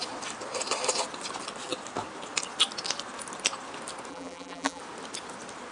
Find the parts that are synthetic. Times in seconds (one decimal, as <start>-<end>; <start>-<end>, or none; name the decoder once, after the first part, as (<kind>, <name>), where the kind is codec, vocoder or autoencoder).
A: 4.1-4.8 (vocoder, BigVGAN v2)